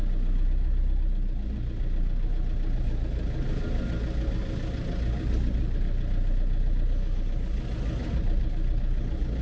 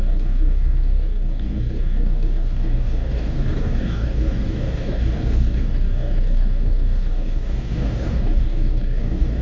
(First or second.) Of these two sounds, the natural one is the first